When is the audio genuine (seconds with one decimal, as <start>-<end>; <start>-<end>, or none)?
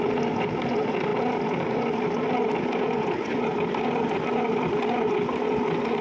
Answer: 0.0-6.0